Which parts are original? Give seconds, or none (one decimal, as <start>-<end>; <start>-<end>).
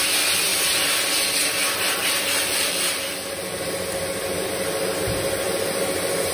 0.0-2.0; 3.7-6.3